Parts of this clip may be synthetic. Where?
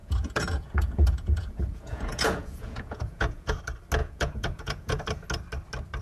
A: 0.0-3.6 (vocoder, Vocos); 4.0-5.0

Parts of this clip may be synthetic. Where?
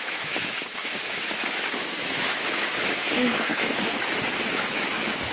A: 0.0-3.9 (autoencoder, DAC-VAE); 4.5-5.3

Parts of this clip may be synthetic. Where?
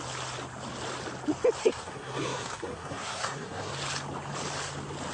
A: 1.6-3.7 (codec, SNAC)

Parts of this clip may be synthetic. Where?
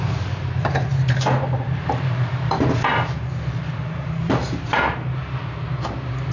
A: 0.0-6.3 (vocoder, BigVGAN v2)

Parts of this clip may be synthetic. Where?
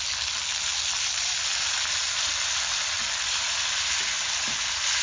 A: none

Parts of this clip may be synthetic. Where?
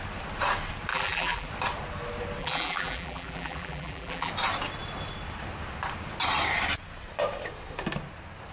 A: 0.9-1.5 (vocoder, BigVGAN v2); 2.4-4.3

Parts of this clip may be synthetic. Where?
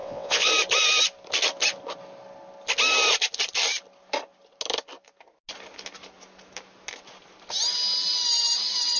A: 0.0-0.5 (vocoder, WaveNeXt)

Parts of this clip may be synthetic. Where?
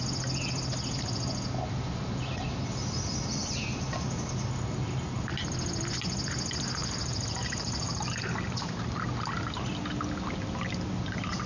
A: 6.8-8.8 (vocoder, BigVGAN v2)